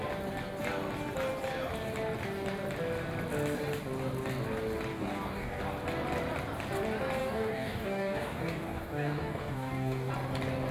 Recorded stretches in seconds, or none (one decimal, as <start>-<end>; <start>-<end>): 0.0-4.9; 5.6-7.2; 10.1-10.7